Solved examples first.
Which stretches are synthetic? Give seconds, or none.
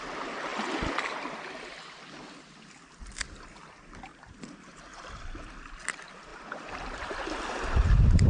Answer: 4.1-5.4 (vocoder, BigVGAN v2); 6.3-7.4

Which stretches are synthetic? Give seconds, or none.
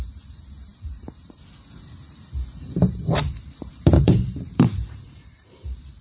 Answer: 0.0-6.0 (vocoder, BigVGAN v2)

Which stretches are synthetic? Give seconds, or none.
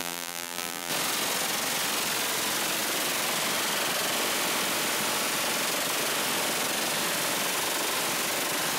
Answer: 0.0-0.9 (vocoder, BigVGAN v2)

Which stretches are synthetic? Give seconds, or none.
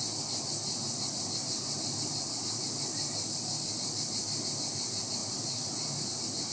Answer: 0.6-4.5 (vocoder, BigVGAN v2); 5.2-6.5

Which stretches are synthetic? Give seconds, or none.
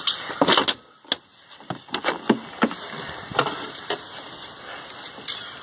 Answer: 1.3-3.8 (vocoder, BigVGAN v2)